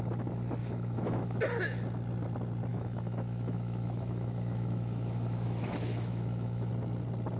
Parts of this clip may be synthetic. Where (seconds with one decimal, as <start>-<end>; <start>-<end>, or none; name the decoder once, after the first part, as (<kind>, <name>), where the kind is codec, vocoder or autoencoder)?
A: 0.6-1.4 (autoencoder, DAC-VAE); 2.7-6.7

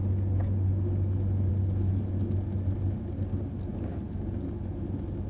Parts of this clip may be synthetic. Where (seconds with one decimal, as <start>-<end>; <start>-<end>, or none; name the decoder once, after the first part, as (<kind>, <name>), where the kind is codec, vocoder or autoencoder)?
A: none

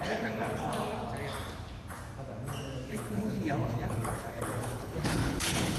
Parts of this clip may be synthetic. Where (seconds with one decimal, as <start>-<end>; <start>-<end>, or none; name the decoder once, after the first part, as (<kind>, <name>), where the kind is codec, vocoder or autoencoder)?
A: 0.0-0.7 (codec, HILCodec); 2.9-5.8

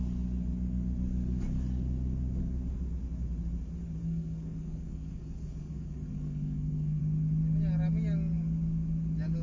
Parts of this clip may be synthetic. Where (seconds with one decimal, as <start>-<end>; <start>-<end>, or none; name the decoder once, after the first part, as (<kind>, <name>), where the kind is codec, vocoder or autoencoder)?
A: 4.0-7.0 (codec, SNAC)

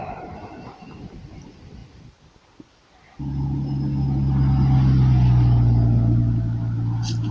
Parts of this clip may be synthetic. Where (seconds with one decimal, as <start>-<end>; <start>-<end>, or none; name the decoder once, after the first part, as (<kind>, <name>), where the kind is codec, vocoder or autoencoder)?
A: none

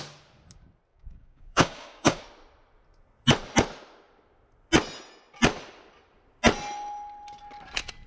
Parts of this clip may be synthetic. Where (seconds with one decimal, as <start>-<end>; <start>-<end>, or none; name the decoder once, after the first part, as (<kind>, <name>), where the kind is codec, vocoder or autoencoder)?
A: 0.9-2.2 (codec, DAC)

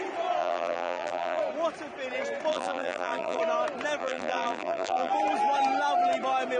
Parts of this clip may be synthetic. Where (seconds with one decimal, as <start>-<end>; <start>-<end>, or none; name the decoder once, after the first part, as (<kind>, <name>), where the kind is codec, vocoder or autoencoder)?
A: 0.4-1.4 (vocoder, BigVGAN v2); 2.5-3.4; 4.0-5.1